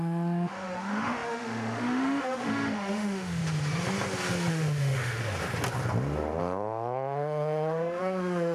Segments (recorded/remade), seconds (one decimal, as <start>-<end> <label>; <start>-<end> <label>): 0.0-3.4 remade; 3.4-4.5 recorded; 4.5-5.2 remade; 5.2-6.4 recorded; 6.4-8.5 remade